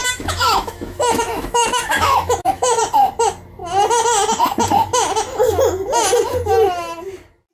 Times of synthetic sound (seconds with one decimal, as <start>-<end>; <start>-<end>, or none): 0.0-2.8